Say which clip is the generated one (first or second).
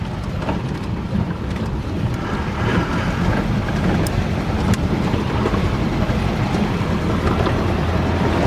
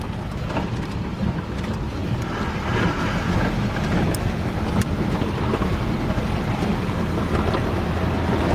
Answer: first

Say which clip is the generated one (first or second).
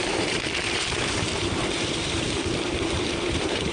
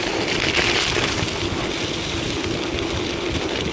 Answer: first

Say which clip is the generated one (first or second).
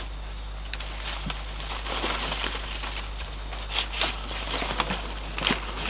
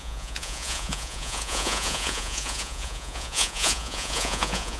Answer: second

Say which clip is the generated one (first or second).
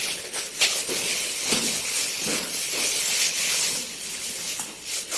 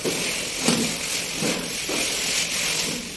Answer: first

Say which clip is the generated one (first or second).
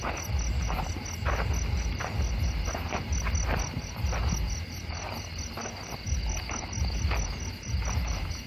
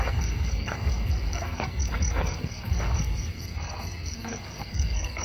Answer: second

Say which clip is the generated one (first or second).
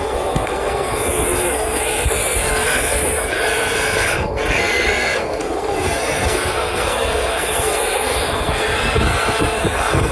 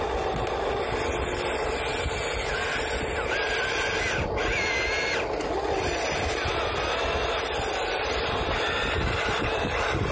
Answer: first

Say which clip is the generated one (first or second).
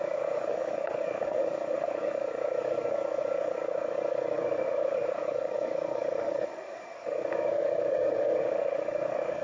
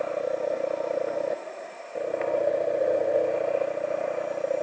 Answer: first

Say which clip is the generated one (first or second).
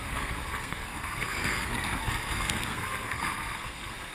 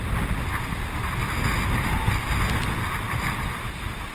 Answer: first